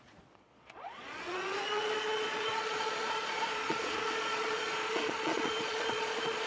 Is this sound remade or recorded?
remade